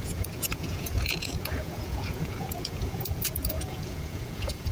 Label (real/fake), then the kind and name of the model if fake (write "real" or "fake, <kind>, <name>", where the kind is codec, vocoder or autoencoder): fake, vocoder, Vocos